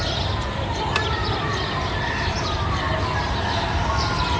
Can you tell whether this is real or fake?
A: real